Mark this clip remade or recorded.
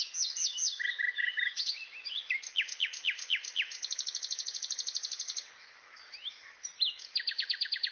remade